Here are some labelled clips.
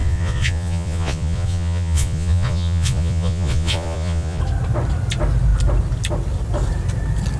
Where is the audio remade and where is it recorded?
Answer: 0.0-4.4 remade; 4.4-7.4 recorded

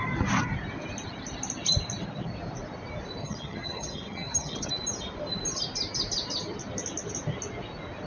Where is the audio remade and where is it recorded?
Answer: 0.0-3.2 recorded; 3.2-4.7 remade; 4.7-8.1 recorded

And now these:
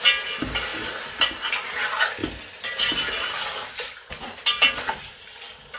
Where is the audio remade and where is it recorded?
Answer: 0.0-5.8 recorded